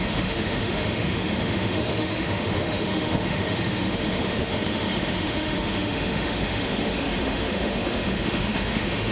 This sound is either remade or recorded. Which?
remade